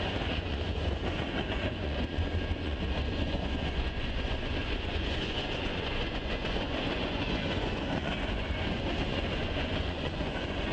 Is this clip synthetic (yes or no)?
yes